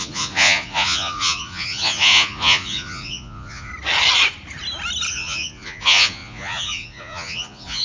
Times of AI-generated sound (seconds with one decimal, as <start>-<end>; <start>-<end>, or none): 0.0-3.7; 5.1-7.8